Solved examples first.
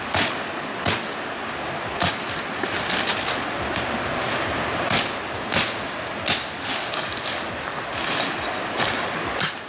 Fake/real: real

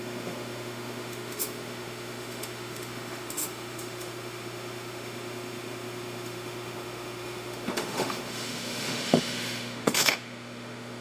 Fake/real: fake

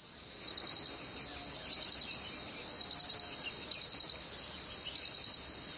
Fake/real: real